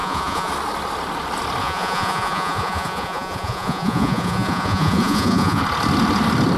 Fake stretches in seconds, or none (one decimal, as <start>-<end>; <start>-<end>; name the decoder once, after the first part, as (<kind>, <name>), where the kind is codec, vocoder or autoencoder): 0.0-0.5 (vocoder, Vocos); 1.6-5.6